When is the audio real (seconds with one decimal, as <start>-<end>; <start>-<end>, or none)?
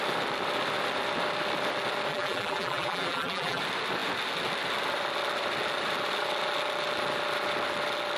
0.0-2.1; 3.6-8.2